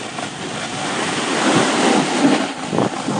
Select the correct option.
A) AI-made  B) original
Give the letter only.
B